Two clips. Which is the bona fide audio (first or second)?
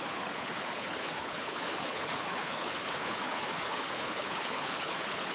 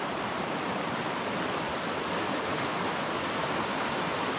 second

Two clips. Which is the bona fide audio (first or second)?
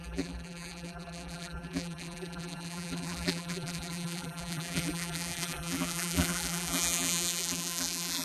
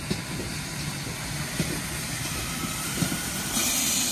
second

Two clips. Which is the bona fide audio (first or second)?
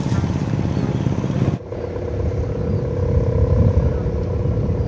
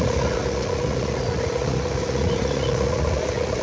first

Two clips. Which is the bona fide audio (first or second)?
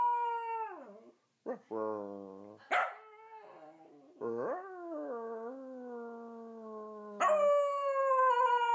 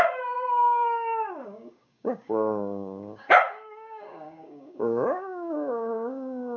first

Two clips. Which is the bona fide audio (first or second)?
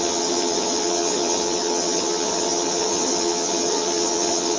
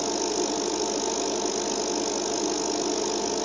second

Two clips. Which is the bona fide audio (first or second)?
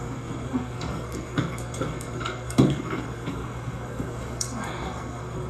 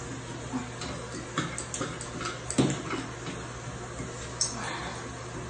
second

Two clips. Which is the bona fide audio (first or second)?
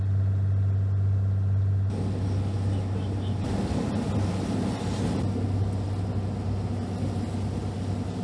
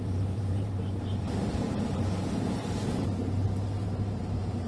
first